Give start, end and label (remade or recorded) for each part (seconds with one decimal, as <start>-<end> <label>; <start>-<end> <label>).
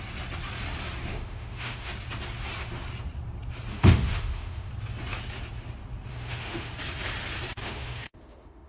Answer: 0.0-1.1 recorded; 1.1-1.9 remade; 1.9-3.7 recorded; 3.7-4.7 remade; 4.7-6.1 recorded; 6.1-6.7 remade; 6.7-7.6 recorded; 7.6-8.7 remade